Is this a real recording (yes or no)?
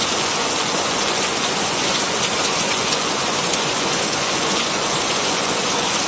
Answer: no